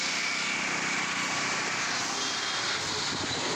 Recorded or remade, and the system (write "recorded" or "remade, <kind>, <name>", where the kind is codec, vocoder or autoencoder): recorded